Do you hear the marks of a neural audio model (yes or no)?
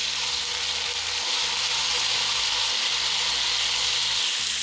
no